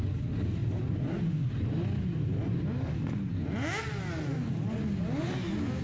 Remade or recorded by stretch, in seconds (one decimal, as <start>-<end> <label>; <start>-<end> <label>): 0.0-5.8 recorded